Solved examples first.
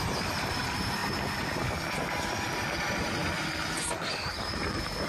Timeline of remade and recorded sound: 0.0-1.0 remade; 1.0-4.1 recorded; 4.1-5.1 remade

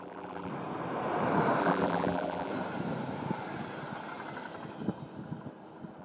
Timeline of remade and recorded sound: 0.0-0.5 remade; 0.5-1.6 recorded; 1.6-2.5 remade; 2.5-6.0 recorded

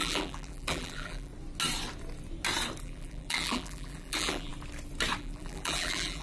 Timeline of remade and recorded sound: 0.0-1.3 remade; 1.3-2.8 recorded; 2.8-4.5 remade; 4.5-5.2 recorded; 5.2-6.2 remade

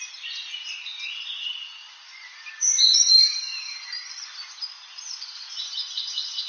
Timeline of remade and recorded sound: 0.0-1.8 recorded; 1.8-5.7 remade; 5.7-6.5 recorded

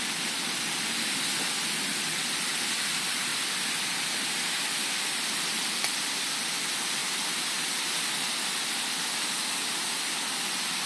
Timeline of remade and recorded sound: 0.0-3.3 remade; 3.3-4.7 recorded; 4.7-7.0 remade; 7.0-8.1 recorded; 8.1-10.9 remade